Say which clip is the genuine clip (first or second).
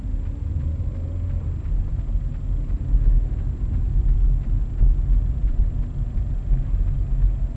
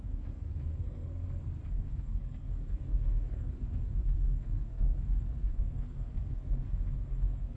first